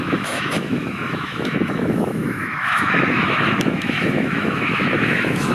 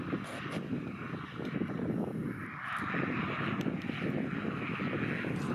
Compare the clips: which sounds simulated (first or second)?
first